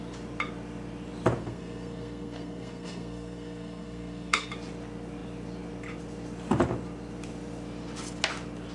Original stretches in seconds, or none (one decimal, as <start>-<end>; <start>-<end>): 0.0-1.4; 4.5-8.7